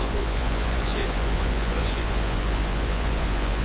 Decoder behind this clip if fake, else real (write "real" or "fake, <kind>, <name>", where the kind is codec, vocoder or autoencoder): fake, vocoder, Vocos